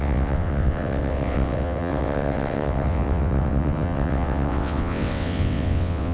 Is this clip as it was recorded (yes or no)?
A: no